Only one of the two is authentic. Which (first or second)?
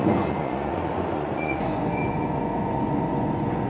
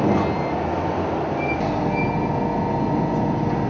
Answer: second